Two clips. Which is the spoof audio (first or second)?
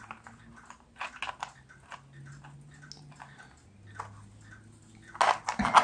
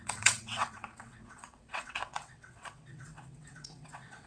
second